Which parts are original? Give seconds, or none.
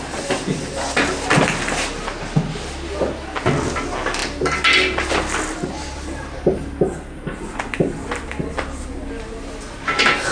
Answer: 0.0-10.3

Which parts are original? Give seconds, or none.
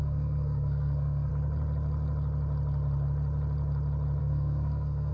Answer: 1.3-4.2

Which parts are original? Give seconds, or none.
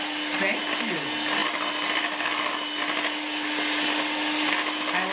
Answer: 0.0-5.1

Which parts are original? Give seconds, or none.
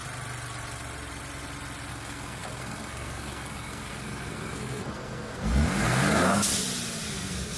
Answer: 0.0-1.9; 6.5-7.1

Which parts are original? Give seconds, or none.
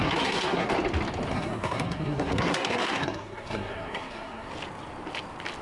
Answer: 0.7-1.3; 4.5-5.6